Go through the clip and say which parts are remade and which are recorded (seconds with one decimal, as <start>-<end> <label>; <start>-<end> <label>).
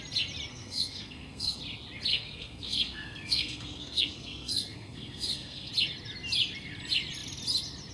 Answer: 0.0-0.5 recorded; 0.5-1.6 remade; 1.6-2.1 recorded; 2.1-5.7 remade; 5.7-7.9 recorded